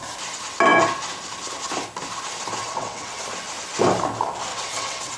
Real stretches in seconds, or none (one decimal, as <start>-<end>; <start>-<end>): 0.0-2.6; 3.2-4.5